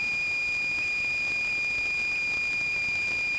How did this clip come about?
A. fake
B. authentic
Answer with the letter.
B